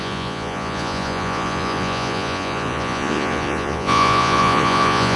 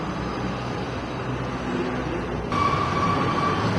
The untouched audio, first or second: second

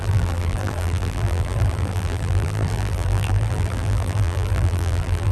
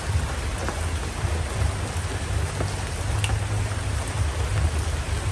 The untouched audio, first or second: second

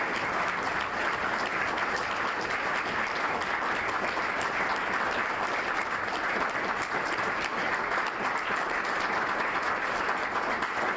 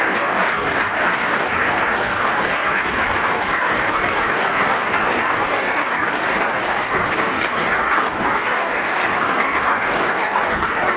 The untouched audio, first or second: first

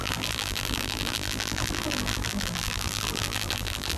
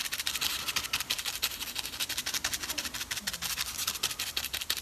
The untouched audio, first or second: second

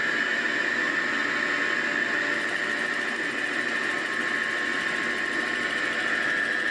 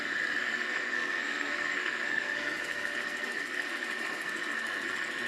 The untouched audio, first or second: first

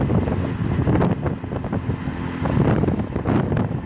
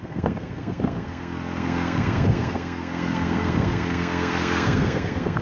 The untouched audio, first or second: first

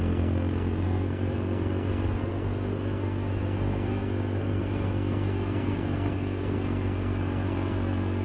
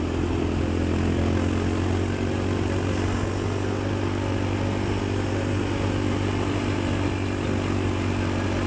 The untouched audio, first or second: second